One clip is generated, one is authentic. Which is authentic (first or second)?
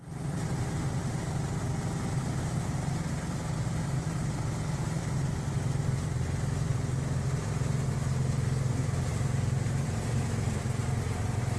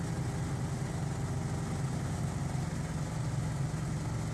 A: second